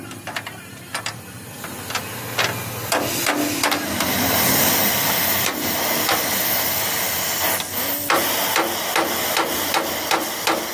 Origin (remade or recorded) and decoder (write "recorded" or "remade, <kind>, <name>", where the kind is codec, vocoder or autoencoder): recorded